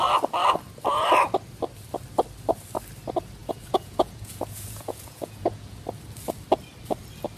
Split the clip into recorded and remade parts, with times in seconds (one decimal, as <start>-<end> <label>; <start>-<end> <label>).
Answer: 0.0-3.4 recorded; 3.4-5.8 remade; 5.8-7.4 recorded